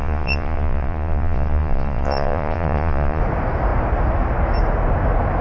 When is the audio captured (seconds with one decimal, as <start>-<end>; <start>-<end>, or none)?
3.2-5.4